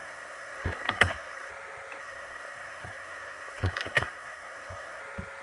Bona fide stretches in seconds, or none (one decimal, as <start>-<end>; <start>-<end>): 1.5-2.0; 5.0-5.4

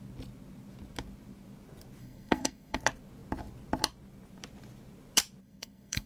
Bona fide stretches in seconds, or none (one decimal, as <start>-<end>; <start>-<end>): 0.0-2.0; 2.8-5.4

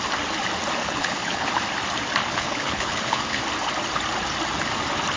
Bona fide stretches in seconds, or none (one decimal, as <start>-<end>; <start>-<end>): 0.0-0.8; 1.5-2.2; 3.4-5.2

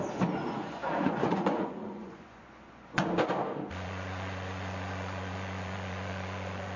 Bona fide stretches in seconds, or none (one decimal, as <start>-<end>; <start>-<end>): 0.0-0.4; 3.1-3.5